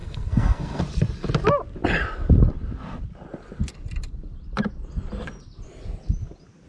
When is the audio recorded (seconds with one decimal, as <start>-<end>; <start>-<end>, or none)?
0.8-6.7